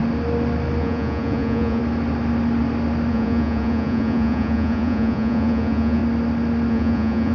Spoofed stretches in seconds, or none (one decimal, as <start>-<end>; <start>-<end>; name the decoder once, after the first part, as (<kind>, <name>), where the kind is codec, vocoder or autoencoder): 0.8-1.8 (vocoder, Vocos); 3.1-6.0; 6.7-7.3